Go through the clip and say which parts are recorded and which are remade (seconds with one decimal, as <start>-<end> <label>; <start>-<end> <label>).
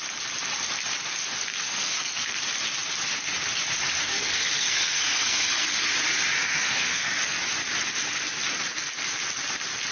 0.0-1.5 recorded; 1.5-2.4 remade; 2.4-4.1 recorded; 4.1-5.9 remade; 5.9-6.5 recorded; 6.5-7.4 remade; 7.4-9.9 recorded